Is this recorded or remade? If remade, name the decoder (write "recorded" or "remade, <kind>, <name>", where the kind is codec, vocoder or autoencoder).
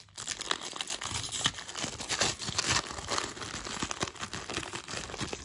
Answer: recorded